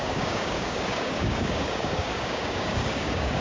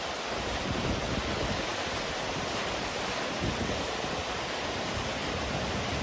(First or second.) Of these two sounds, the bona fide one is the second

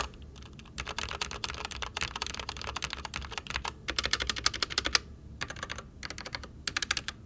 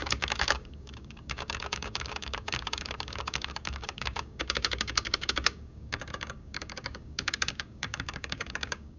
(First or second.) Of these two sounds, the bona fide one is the first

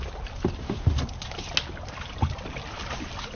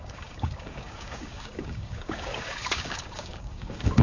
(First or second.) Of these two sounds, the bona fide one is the first